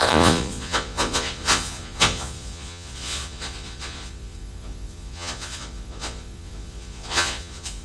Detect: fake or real fake